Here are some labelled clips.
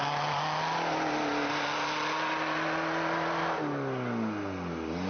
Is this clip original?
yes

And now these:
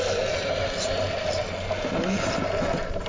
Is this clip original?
no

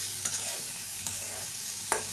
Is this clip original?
no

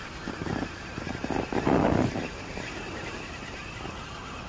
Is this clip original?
yes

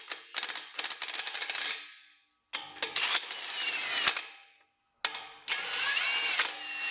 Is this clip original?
yes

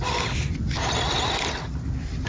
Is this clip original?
yes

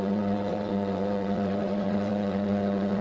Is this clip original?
no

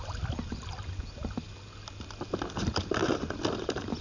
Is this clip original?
yes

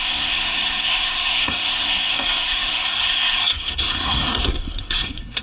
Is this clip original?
no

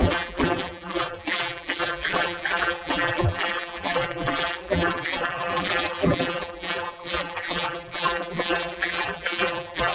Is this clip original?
no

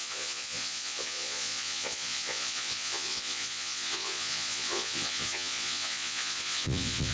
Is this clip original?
no